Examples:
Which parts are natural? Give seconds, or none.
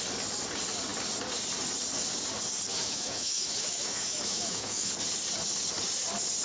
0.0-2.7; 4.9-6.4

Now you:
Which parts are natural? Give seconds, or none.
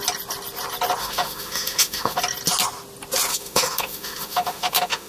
0.0-1.0; 2.2-3.3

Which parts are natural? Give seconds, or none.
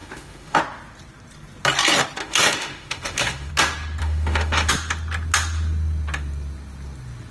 0.6-2.2; 3.5-4.0; 4.7-7.3